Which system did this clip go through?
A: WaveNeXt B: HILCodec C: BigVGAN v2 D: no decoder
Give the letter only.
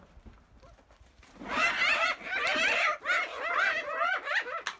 D